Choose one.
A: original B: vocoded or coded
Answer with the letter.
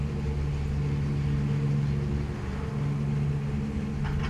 A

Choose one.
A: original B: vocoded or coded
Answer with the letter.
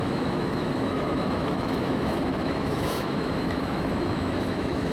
B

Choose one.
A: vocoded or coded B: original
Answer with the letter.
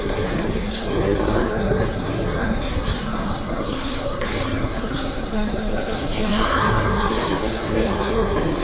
A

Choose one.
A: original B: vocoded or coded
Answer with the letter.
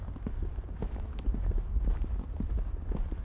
A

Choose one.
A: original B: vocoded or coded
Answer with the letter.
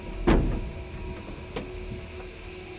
A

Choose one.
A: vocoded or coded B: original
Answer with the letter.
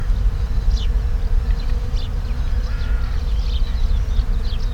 B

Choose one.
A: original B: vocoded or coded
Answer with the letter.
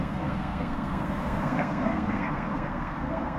B